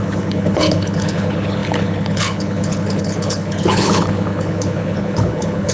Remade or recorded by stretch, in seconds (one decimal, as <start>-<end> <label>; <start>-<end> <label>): 0.0-5.7 remade